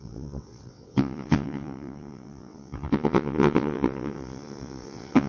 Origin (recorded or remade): remade